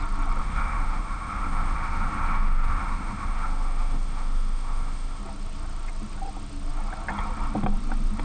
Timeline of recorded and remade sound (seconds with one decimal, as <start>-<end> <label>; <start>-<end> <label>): 0.0-0.4 recorded; 0.4-5.2 remade; 5.2-8.2 recorded